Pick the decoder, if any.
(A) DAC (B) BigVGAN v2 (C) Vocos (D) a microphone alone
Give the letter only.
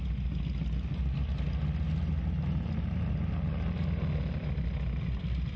D